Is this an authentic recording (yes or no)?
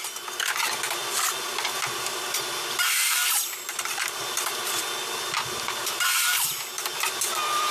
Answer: no